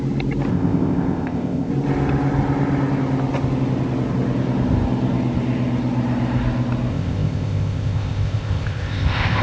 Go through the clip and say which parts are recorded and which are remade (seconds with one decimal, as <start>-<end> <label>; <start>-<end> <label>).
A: 0.0-0.5 recorded; 0.5-1.7 remade; 1.7-6.9 recorded; 6.9-9.4 remade